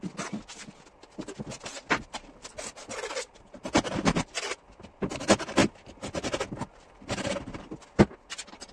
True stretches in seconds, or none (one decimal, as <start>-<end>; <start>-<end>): 0.0-1.8; 5.1-8.7